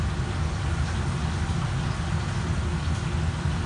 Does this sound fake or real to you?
real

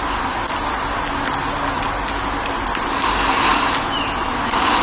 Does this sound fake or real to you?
real